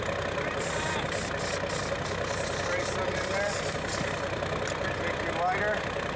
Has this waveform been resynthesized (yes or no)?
no